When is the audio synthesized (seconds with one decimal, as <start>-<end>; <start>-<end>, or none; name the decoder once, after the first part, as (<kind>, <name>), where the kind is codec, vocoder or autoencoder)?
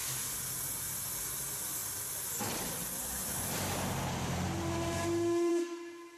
none